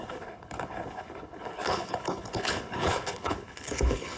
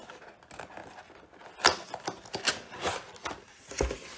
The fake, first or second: first